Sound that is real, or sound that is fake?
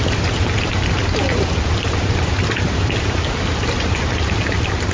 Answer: real